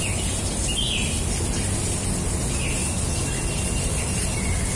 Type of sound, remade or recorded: recorded